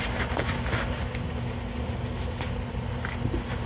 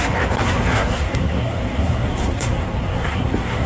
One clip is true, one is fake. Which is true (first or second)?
first